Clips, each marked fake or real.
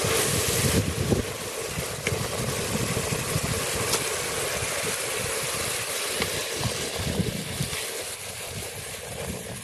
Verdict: real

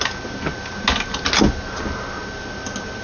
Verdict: real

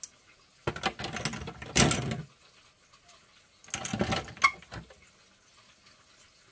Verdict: real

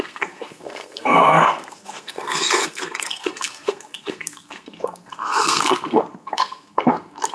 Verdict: fake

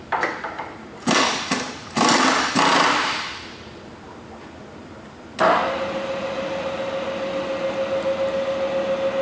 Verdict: real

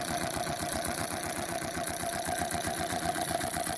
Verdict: fake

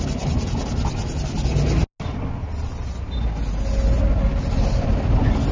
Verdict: real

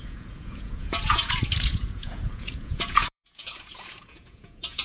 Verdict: fake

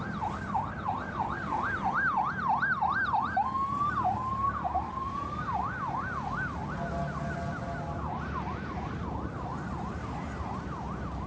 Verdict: real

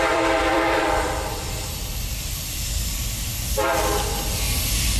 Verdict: fake